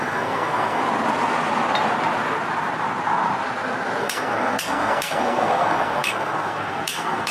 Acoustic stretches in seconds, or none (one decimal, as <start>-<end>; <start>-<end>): 0.8-4.0